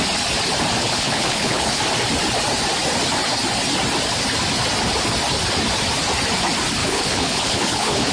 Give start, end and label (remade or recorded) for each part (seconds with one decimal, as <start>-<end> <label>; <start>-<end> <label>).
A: 0.0-0.8 recorded; 0.8-1.8 remade; 1.8-6.8 recorded; 6.8-8.1 remade